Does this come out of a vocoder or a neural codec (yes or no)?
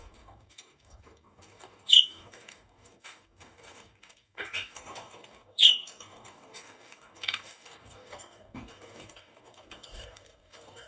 yes